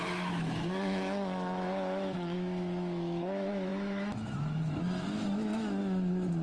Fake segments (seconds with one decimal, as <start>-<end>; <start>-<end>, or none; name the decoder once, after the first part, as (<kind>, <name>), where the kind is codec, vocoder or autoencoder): 0.0-6.4 (autoencoder, DAC-VAE)